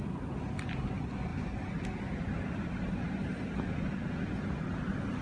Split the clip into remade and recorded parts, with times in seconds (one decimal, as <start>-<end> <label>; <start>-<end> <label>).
0.0-5.2 recorded